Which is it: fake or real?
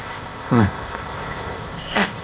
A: fake